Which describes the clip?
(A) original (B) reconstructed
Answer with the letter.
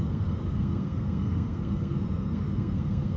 B